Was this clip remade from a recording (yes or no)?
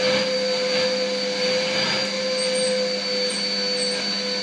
no